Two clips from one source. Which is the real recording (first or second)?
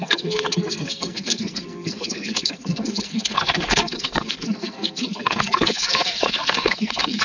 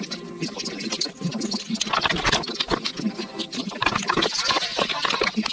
second